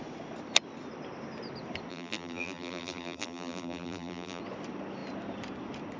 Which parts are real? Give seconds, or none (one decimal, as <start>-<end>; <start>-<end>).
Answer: 0.0-1.9; 4.4-6.0